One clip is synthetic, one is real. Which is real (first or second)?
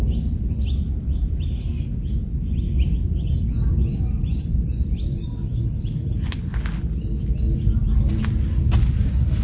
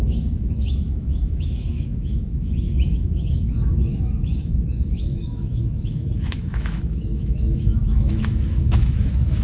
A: first